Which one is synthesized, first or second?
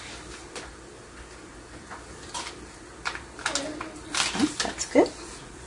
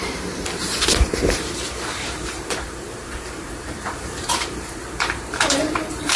second